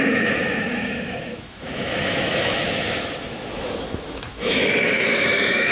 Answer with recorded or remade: remade